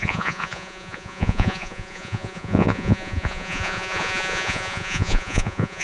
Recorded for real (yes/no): no